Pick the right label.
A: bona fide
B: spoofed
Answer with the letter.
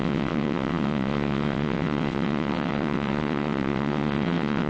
B